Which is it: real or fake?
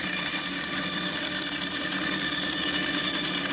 real